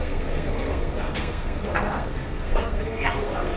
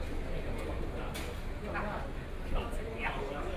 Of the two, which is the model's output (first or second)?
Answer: first